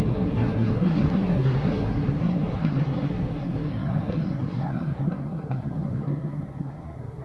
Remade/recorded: remade